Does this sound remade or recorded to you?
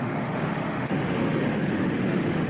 remade